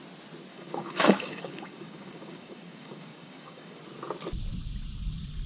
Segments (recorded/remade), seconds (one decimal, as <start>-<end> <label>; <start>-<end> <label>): 0.0-0.5 recorded; 0.5-3.8 remade; 3.8-5.5 recorded